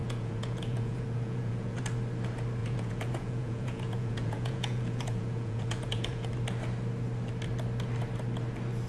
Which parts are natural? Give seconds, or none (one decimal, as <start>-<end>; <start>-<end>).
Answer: 1.8-2.6; 6.3-8.9